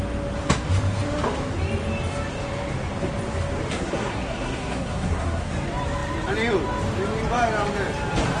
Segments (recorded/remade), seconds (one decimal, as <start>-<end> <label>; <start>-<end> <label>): 0.0-3.7 recorded; 3.7-5.5 remade; 5.5-8.4 recorded